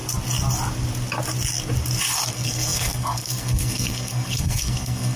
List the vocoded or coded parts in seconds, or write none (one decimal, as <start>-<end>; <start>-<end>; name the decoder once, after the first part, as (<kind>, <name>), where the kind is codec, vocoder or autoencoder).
2.3-5.2 (codec, SNAC)

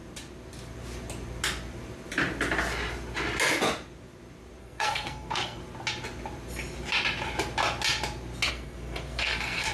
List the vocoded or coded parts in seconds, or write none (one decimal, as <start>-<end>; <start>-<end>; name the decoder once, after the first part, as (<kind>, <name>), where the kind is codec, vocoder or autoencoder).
4.6-5.6 (codec, SNAC); 8.5-9.7

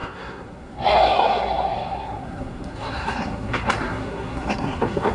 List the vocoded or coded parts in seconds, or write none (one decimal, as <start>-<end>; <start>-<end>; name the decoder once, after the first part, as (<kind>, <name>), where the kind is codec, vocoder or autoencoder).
0.0-5.1 (codec, SNAC)

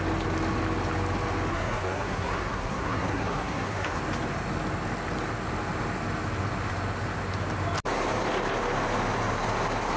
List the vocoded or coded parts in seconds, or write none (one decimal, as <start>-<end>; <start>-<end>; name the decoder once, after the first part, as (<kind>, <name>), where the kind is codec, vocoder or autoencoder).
1.5-4.0 (codec, SNAC)

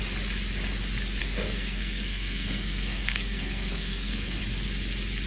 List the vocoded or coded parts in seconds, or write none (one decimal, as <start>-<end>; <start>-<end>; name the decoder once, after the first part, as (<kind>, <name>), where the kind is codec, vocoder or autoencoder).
1.2-4.4 (codec, SNAC)

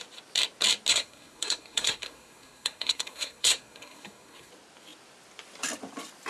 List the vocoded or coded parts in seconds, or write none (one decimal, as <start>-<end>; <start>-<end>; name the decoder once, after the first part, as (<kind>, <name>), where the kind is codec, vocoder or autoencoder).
0.9-4.5 (codec, SNAC)

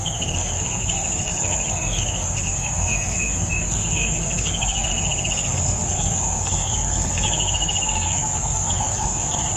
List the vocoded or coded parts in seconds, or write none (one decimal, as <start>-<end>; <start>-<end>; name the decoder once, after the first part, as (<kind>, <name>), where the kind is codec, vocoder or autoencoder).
0.0-9.6 (codec, SNAC)